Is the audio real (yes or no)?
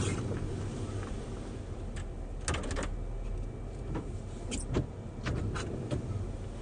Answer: yes